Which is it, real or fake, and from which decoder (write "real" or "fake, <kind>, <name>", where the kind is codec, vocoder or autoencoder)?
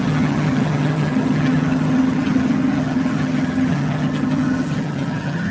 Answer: fake, vocoder, HiFi-GAN